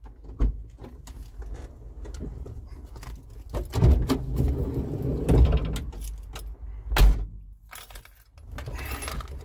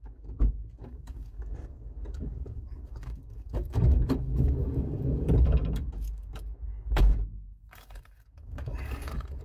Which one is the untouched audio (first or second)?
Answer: first